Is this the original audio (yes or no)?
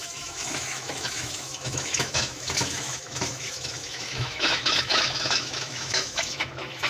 no